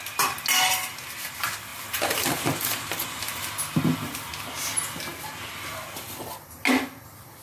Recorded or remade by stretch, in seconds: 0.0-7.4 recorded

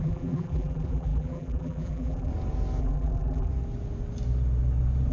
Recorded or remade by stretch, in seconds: 0.0-2.3 remade; 2.3-2.8 recorded; 2.8-3.5 remade; 3.5-5.1 recorded

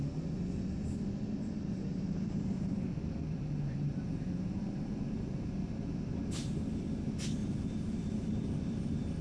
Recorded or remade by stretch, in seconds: 0.0-1.9 recorded; 1.9-6.6 remade; 6.6-7.4 recorded; 7.4-9.2 remade

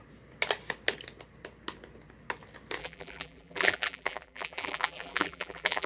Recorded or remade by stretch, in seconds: 0.0-2.8 recorded; 2.8-5.9 remade

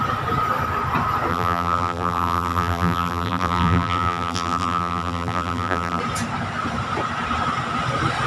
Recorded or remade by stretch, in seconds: 0.0-1.3 recorded; 1.3-6.0 remade; 6.0-8.3 recorded

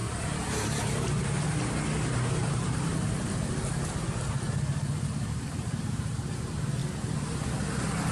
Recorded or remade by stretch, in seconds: 0.0-2.2 recorded; 2.2-2.9 remade; 2.9-5.5 recorded; 5.5-6.8 remade; 6.8-8.1 recorded